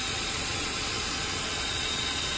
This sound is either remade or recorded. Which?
remade